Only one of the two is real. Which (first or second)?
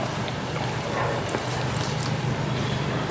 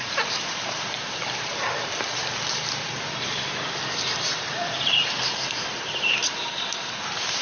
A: first